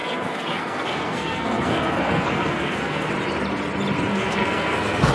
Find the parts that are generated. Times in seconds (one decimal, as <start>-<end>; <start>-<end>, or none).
0.0-3.1; 4.1-5.1